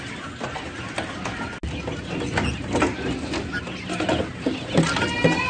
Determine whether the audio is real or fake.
real